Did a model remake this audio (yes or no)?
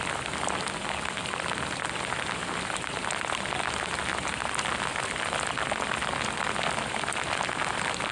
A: no